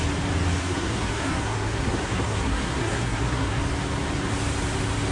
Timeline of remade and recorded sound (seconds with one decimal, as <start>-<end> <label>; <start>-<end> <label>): 0.0-0.6 recorded; 0.6-3.6 remade; 3.6-5.1 recorded